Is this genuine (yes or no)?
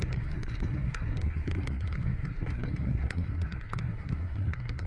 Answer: no